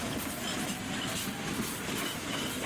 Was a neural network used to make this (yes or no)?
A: no